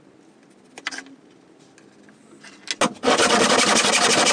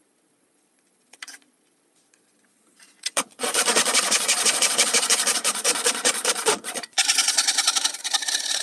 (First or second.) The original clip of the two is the first